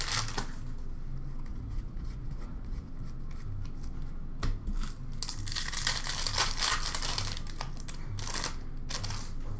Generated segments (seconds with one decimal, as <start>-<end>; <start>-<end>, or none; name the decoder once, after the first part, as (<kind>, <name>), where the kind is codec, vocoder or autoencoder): 1.5-2.9 (vocoder, Vocos)